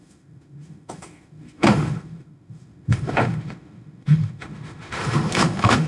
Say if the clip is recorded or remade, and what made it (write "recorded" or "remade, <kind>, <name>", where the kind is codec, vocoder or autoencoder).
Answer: remade, autoencoder, DAC-VAE